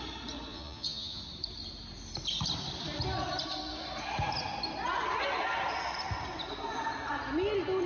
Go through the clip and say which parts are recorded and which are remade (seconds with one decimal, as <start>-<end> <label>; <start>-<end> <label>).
0.0-0.5 recorded; 0.5-1.2 remade; 1.2-7.9 recorded